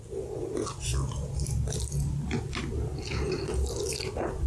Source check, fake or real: real